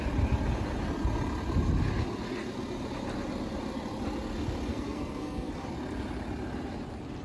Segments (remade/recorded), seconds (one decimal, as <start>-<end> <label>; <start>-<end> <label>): 0.0-4.7 recorded; 4.7-5.5 remade; 5.5-7.2 recorded